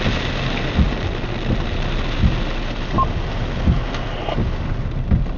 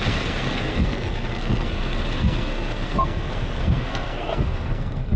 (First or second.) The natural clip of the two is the first